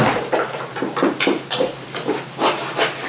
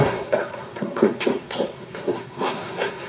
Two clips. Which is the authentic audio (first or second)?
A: first